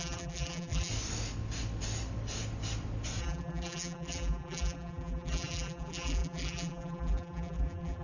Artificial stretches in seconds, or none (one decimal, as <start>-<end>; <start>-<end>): 0.0-0.9; 3.2-8.0